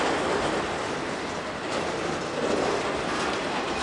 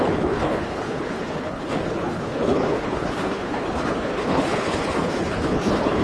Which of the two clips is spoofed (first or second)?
second